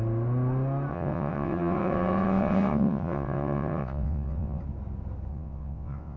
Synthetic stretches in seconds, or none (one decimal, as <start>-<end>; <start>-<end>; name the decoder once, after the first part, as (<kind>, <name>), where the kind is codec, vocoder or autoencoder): 0.9-4.6 (vocoder, WaveNeXt); 5.3-6.2